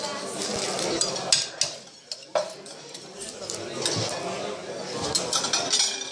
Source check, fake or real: real